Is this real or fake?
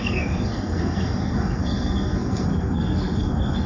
fake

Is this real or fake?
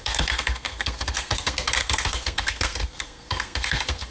fake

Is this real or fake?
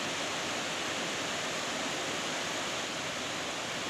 real